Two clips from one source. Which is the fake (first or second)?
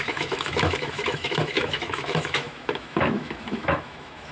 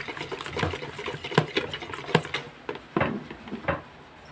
first